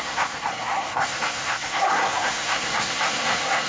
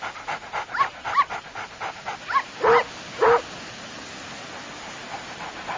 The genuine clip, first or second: second